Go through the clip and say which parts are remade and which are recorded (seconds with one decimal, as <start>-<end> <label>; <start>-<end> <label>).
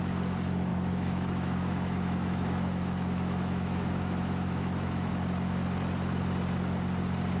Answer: 0.0-0.7 recorded; 0.7-5.1 remade; 5.1-7.4 recorded